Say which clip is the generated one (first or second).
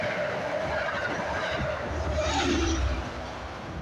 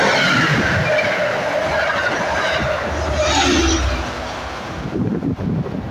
first